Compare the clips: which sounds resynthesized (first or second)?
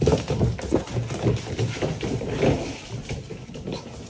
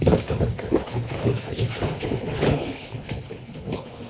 second